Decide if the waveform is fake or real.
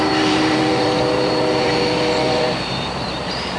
fake